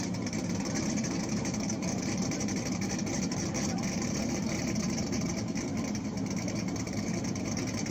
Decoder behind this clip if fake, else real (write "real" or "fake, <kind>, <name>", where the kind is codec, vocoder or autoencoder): fake, vocoder, BigVGAN v2